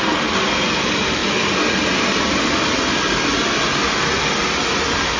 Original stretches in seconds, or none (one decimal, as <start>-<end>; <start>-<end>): 0.0-5.2

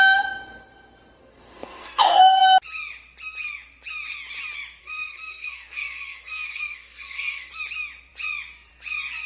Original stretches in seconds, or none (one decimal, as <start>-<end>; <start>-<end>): 0.0-1.2; 2.4-4.8; 7.5-9.3